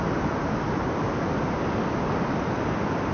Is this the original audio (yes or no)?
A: yes